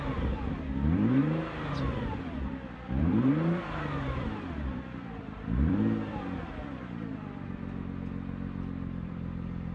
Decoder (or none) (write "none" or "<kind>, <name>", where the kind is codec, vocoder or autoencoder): vocoder, BigVGAN v2